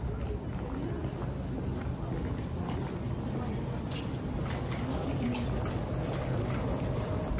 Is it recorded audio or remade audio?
recorded